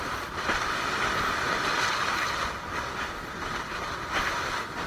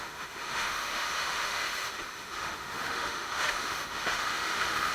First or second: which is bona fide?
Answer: first